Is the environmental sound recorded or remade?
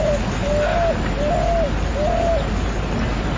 recorded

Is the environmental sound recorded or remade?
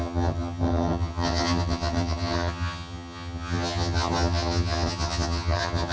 remade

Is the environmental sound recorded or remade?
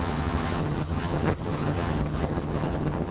remade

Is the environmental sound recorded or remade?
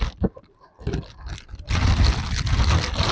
recorded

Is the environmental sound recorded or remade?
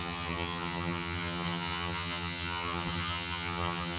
remade